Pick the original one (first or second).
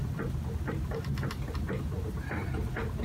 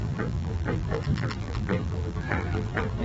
first